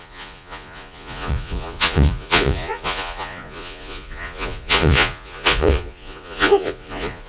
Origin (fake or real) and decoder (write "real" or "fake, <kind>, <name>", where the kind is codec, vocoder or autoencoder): fake, vocoder, Vocos